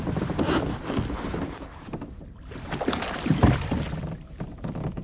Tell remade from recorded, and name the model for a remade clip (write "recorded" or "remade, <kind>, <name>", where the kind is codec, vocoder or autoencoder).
recorded